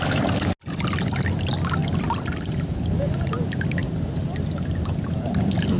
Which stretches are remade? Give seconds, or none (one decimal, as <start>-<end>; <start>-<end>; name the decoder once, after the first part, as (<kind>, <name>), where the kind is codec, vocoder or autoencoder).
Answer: none